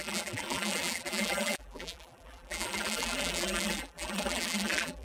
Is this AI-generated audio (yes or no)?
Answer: yes